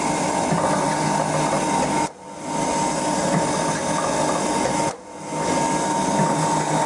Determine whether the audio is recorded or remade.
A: recorded